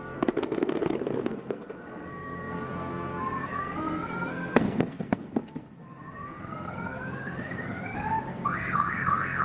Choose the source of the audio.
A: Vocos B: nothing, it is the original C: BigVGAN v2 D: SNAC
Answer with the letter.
D